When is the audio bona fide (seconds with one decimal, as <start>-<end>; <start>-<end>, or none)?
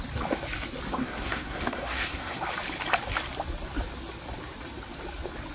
0.0-1.0; 2.4-5.5